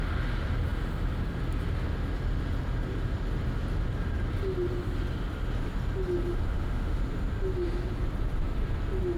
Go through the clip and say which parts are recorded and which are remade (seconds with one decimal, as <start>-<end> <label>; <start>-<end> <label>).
0.0-6.3 recorded; 6.3-7.0 remade; 7.0-9.2 recorded